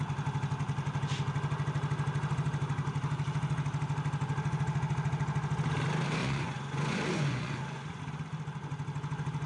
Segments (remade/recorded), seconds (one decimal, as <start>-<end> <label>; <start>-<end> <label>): 0.0-6.2 recorded; 6.2-8.0 remade; 8.0-9.5 recorded